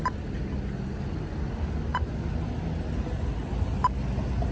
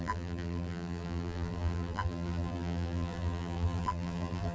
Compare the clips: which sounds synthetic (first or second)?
second